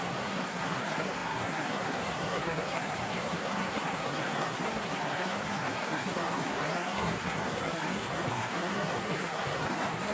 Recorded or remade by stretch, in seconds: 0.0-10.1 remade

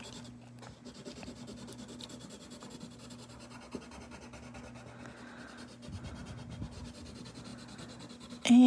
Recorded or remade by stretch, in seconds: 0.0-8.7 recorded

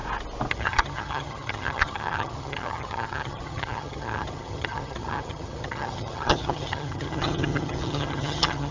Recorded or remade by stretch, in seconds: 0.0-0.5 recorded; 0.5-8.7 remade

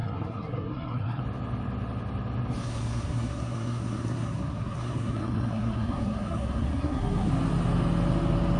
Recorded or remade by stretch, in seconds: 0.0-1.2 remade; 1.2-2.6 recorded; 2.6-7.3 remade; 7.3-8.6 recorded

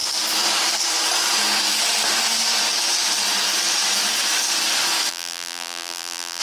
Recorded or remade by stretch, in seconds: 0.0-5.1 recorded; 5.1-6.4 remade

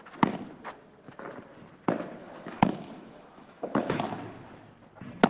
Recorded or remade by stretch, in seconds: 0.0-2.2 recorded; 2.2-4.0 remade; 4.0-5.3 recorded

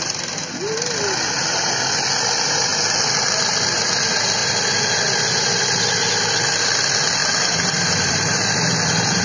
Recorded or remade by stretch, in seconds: 0.0-7.2 recorded; 7.2-9.2 remade

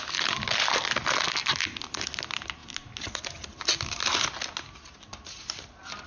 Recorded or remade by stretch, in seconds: 0.0-6.1 recorded